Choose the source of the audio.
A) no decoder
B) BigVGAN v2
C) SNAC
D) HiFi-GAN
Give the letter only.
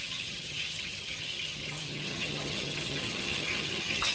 D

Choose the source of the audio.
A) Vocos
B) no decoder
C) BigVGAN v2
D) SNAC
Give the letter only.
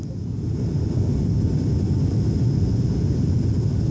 B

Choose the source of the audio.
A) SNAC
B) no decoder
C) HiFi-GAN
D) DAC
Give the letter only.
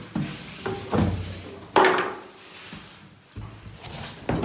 B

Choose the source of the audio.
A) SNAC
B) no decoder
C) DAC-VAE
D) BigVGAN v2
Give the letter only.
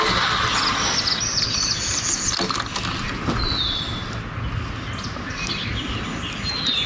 B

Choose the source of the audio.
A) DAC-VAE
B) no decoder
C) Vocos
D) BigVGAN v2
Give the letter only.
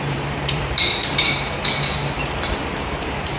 D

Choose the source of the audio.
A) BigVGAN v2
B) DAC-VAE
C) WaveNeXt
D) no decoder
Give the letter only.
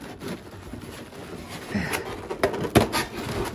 D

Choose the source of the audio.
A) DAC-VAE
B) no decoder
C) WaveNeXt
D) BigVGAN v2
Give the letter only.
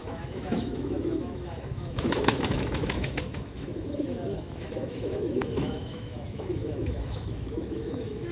A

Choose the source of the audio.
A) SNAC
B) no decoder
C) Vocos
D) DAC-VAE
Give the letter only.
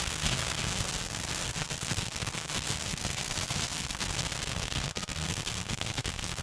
A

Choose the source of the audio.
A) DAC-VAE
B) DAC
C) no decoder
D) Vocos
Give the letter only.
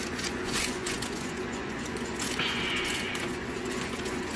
D